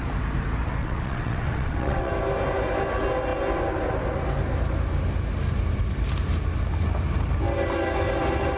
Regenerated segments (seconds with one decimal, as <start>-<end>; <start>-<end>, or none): 0.8-2.1